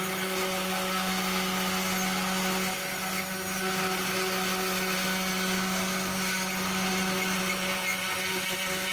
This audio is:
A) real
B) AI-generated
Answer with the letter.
A